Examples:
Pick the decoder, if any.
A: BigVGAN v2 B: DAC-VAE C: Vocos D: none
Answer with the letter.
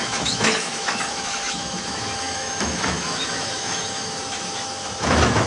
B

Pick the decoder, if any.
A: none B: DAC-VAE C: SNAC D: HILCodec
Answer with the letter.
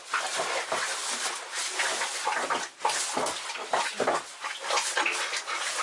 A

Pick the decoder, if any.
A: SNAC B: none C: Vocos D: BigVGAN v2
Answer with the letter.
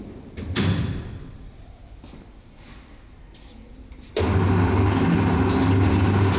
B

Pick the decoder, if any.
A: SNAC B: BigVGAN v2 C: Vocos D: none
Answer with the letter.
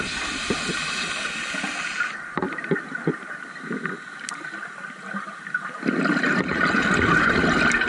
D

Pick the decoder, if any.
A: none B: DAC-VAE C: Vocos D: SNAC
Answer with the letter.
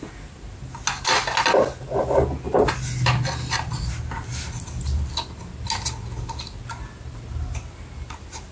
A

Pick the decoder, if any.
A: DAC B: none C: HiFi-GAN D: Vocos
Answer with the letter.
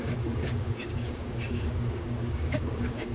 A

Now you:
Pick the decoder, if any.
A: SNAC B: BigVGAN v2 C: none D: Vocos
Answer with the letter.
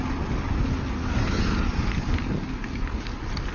C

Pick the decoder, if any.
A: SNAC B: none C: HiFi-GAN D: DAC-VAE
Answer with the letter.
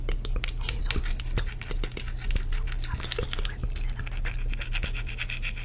B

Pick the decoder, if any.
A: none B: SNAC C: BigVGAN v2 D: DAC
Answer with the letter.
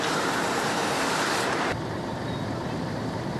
C